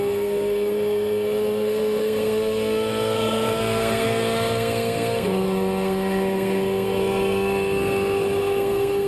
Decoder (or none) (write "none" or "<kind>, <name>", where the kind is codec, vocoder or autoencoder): codec, SNAC